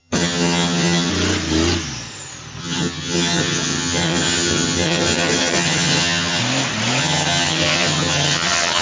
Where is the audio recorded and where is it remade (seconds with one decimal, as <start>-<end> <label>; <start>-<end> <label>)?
0.0-1.1 remade; 1.1-2.6 recorded; 2.6-6.4 remade; 6.4-7.0 recorded; 7.0-8.8 remade